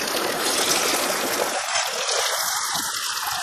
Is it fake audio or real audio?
real